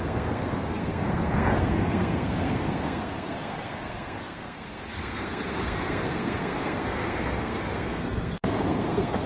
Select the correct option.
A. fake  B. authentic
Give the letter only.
A